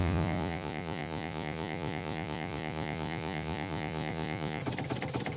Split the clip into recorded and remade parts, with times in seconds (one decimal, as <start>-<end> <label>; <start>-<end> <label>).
0.0-4.6 remade; 4.6-5.4 recorded